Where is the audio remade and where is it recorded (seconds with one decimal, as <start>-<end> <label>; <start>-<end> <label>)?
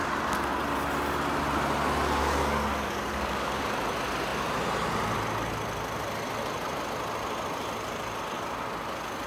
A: 0.0-2.2 recorded; 2.2-3.6 remade; 3.6-9.3 recorded